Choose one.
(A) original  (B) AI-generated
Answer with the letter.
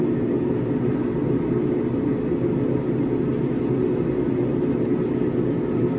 A